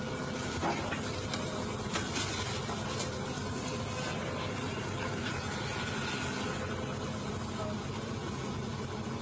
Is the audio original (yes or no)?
yes